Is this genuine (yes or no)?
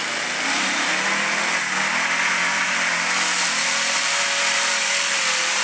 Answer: yes